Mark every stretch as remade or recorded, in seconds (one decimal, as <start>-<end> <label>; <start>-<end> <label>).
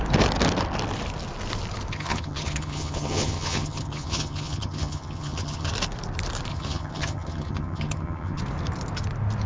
0.0-1.9 recorded; 1.9-5.7 remade; 5.7-6.5 recorded; 6.5-8.4 remade; 8.4-9.5 recorded